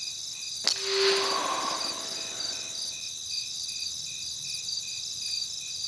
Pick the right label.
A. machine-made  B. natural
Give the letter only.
B